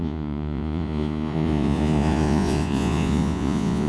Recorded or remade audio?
remade